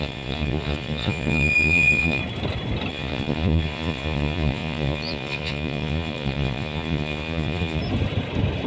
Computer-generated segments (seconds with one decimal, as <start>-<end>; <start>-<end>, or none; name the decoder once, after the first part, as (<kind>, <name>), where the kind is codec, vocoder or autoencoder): 0.0-2.2 (vocoder, Vocos); 2.9-7.8